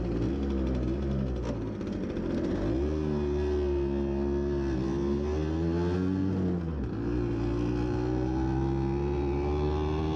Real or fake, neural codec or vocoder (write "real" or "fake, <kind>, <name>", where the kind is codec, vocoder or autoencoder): real